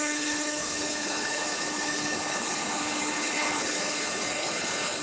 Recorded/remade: remade